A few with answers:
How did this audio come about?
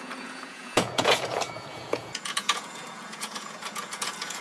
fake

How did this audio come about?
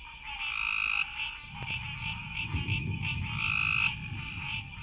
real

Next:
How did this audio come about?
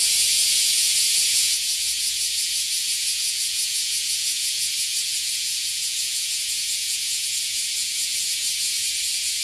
fake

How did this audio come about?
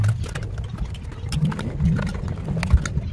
real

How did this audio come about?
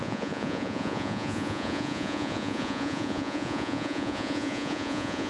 fake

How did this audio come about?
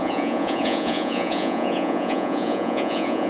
fake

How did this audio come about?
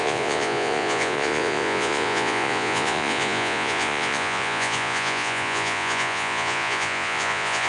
fake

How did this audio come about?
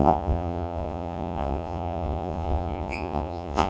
fake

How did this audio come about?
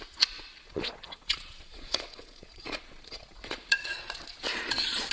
fake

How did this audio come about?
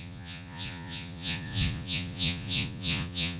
fake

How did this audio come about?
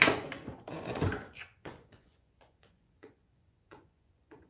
fake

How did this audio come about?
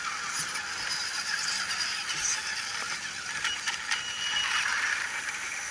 real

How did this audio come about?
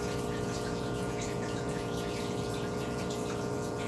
fake